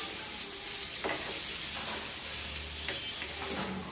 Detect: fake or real real